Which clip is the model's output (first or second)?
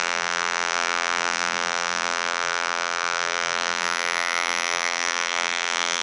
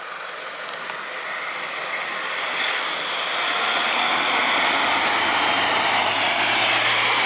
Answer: first